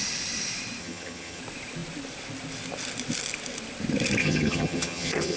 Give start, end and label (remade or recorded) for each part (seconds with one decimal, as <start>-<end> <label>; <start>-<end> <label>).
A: 0.0-0.8 recorded; 0.8-1.4 remade; 1.4-4.2 recorded; 4.2-5.4 remade